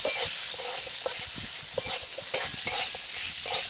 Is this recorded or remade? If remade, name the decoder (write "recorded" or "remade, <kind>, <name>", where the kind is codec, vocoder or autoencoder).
recorded